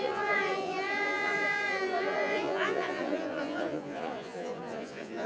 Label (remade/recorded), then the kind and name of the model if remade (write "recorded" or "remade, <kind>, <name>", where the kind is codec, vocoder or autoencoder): remade, vocoder, Vocos